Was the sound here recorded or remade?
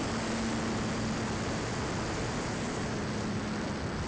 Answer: recorded